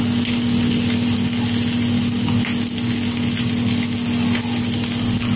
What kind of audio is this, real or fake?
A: real